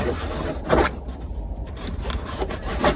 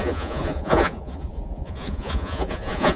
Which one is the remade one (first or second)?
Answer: second